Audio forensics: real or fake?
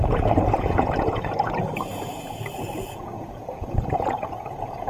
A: fake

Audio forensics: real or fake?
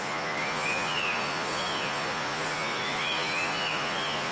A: fake